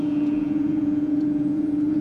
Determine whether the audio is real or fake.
fake